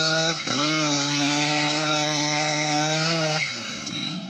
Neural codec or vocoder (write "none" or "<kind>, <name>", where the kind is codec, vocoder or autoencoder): codec, SNAC